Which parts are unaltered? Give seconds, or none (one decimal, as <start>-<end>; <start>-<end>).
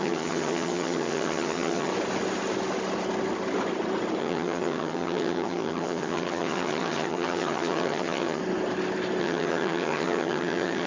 1.9-4.2; 8.4-9.2